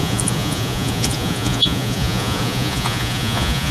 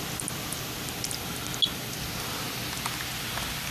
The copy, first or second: first